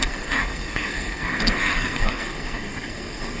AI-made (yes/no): yes